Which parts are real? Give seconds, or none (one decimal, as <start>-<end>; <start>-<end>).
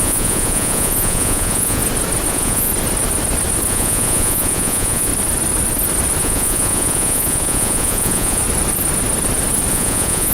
1.8-2.3; 2.7-3.7; 5.1-6.2; 8.4-9.7